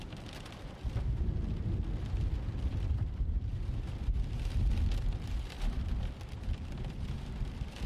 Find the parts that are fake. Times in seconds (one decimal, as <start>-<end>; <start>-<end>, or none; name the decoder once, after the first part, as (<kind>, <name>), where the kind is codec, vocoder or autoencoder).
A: 2.7-7.4 (vocoder, BigVGAN v2)